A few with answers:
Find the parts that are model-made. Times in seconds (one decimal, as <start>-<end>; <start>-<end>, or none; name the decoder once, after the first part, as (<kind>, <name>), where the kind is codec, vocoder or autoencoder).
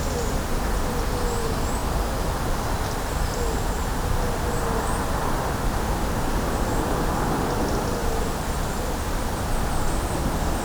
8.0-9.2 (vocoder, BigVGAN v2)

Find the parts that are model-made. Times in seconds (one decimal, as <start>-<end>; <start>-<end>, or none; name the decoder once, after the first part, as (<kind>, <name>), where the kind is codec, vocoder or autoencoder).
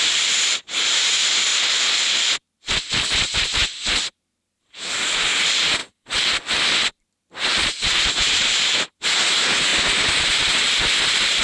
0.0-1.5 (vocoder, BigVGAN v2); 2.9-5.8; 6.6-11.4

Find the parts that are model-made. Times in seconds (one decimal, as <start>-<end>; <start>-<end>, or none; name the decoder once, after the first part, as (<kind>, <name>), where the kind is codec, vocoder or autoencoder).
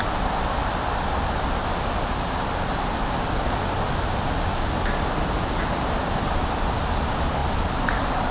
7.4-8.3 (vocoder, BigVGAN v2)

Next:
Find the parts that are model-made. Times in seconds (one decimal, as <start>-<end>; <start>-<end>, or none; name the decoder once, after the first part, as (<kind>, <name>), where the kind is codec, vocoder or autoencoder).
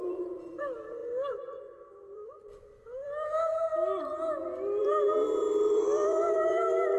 0.0-1.0 (vocoder, BigVGAN v2); 1.6-3.7; 4.8-7.0